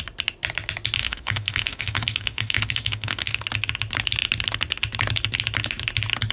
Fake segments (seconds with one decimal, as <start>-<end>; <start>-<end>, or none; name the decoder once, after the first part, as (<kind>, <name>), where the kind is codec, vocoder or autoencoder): 1.0-3.4 (autoencoder, DAC-VAE)